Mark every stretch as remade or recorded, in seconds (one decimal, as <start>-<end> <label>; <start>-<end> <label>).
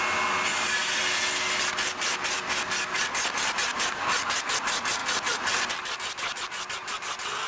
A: 0.0-5.0 recorded; 5.0-5.7 remade; 5.7-7.5 recorded